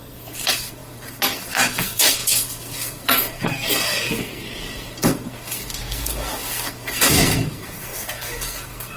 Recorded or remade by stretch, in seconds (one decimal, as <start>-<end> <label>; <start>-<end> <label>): 0.0-9.0 remade